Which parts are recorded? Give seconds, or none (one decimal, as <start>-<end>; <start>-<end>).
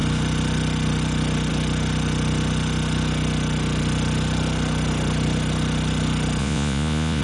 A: 0.0-6.4